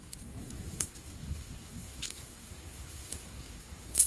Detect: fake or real fake